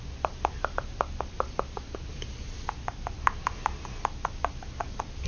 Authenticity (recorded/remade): recorded